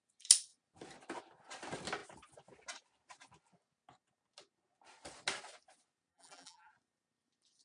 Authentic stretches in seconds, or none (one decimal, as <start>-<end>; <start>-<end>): 0.0-6.1; 6.7-7.6